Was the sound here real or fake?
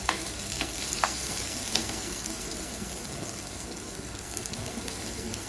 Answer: fake